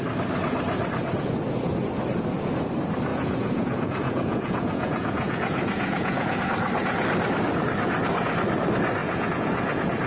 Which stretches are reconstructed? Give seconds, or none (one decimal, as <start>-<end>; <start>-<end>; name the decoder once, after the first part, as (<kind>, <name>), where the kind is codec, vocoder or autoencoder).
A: 3.1-6.4 (vocoder, Vocos); 9.0-10.1